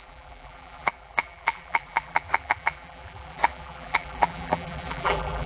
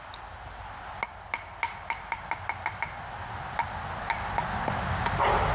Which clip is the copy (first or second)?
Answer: first